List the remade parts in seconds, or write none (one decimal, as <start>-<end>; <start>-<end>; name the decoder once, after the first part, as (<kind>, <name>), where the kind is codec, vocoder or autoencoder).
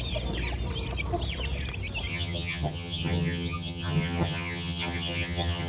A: 2.1-5.7 (vocoder, HiFi-GAN)